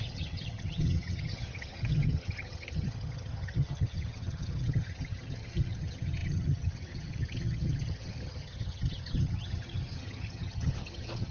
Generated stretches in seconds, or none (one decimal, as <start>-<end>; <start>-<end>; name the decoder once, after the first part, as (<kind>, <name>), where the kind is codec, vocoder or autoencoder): 0.0-11.3 (vocoder, HiFi-GAN)